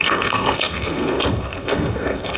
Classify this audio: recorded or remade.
remade